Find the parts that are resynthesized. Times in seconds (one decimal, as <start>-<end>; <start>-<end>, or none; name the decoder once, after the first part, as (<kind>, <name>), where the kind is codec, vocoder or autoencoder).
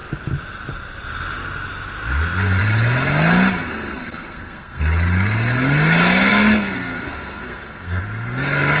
3.6-4.8 (codec, SNAC); 6.3-8.0